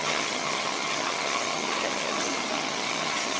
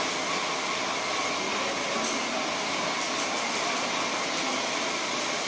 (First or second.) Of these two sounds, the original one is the second